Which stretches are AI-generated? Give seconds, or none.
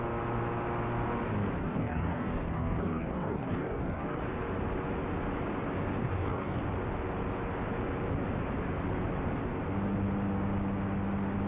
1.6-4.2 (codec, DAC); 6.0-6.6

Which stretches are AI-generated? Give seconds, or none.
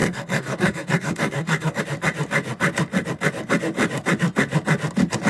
0.0-1.8 (codec, DAC)